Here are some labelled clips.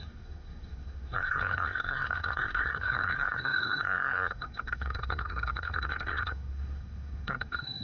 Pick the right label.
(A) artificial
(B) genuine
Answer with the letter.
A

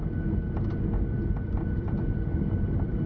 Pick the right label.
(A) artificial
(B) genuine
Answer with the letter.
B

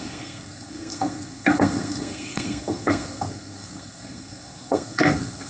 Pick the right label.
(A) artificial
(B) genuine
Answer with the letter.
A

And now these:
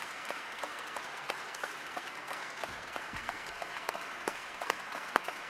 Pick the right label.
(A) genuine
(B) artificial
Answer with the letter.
B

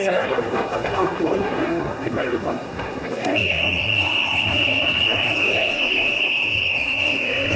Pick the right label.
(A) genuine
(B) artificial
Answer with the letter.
B